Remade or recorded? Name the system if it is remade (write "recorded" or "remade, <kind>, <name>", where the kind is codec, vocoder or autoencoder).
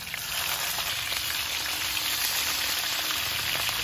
recorded